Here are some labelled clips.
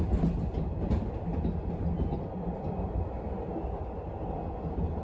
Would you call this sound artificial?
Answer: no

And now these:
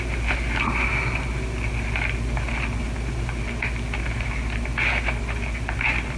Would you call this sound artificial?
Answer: no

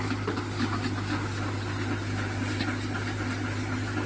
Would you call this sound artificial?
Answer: no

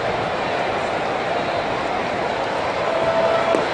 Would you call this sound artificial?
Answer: no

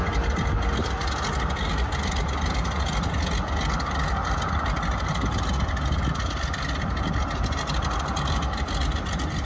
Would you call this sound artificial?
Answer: no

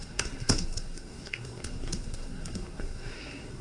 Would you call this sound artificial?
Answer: yes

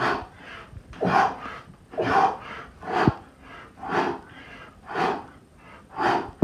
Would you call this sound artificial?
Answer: no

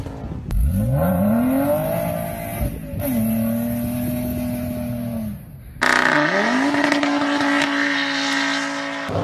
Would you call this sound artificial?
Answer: no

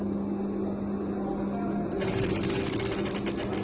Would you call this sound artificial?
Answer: no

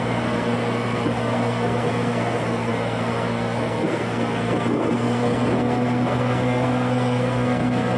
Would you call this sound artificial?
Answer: yes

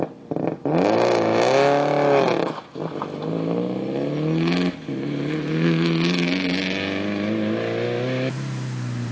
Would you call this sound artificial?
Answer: no